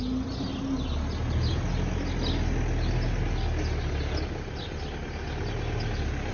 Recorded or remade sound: recorded